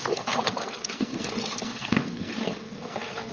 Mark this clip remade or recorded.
remade